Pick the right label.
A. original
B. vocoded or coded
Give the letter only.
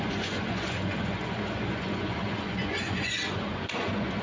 B